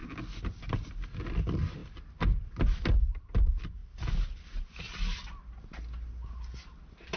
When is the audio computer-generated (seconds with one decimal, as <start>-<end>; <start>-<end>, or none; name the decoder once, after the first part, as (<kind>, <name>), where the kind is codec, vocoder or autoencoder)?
none